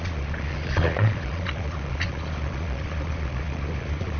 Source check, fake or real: fake